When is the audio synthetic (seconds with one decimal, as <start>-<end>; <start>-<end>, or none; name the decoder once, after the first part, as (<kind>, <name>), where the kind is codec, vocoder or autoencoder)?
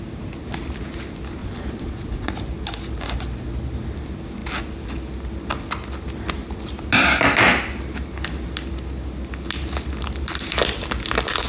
1.4-2.3 (vocoder, Vocos)